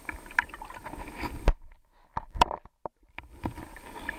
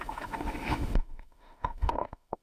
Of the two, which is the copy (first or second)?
second